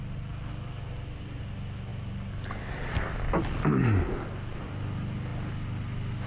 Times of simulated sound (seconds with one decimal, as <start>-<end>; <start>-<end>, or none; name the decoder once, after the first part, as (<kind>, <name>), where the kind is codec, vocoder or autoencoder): none